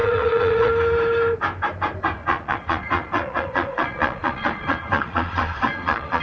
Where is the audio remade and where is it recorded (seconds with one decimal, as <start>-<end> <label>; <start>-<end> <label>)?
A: 0.0-0.7 remade; 0.7-2.2 recorded; 2.2-6.2 remade